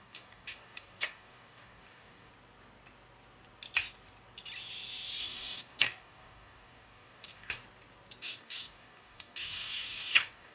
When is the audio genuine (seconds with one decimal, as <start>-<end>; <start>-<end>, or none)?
2.3-5.2; 7.6-8.2